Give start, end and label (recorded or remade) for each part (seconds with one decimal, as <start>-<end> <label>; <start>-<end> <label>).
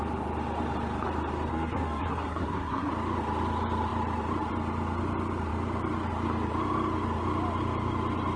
0.0-1.5 recorded; 1.5-2.9 remade; 2.9-8.4 recorded